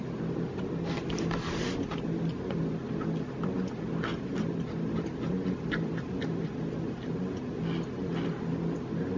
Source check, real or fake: real